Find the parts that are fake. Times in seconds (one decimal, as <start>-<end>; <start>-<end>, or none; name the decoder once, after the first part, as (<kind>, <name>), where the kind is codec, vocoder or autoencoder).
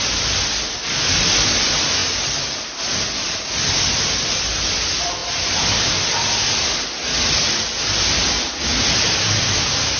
none